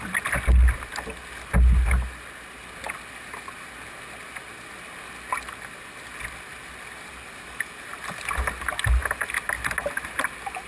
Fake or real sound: real